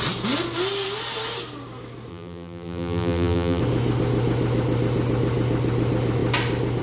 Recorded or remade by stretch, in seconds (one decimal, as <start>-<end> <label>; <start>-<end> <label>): 0.0-2.1 recorded; 2.1-3.6 remade; 3.6-6.8 recorded